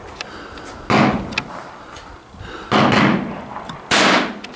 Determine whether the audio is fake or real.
real